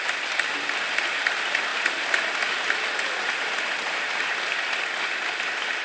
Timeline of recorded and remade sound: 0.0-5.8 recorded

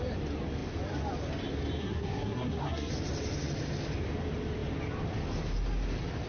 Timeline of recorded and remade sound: 0.0-1.8 recorded; 1.8-2.9 remade; 2.9-6.3 recorded

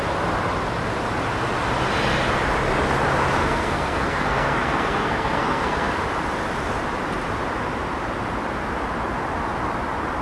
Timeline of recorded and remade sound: 0.0-3.4 recorded; 3.4-5.9 remade; 5.9-10.2 recorded

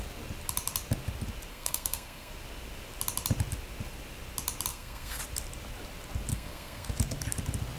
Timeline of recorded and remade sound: 0.0-1.5 recorded; 1.5-2.3 remade; 2.3-4.7 recorded; 4.7-5.2 remade; 5.2-6.3 recorded; 6.3-6.9 remade; 6.9-7.8 recorded